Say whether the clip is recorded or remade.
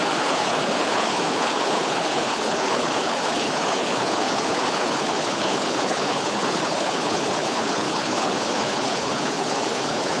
remade